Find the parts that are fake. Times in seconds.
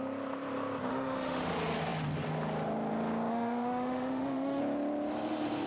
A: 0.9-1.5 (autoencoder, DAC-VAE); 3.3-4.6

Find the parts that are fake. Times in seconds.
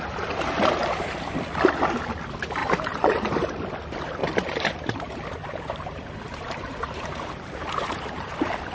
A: 2.6-3.3 (vocoder, BigVGAN v2); 4.2-8.2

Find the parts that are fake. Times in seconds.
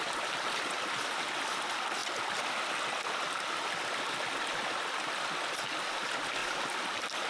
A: 2.0-2.6 (vocoder, BigVGAN v2); 6.4-7.3